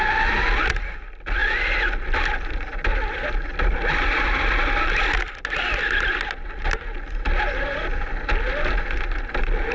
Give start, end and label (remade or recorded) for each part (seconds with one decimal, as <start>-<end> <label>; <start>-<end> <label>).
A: 0.0-9.7 recorded